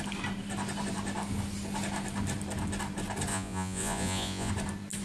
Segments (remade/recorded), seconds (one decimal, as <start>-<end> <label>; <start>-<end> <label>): 0.0-3.3 recorded; 3.3-4.5 remade; 4.5-5.0 recorded